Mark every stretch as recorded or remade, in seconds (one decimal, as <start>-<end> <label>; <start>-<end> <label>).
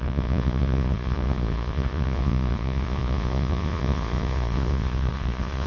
0.0-5.7 remade